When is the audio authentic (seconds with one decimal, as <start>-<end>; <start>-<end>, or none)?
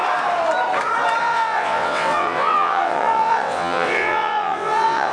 0.0-1.2